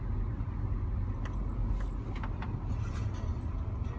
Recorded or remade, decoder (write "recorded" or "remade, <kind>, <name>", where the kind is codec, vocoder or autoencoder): recorded